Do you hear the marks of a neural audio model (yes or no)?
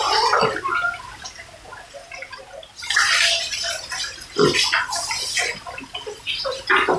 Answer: no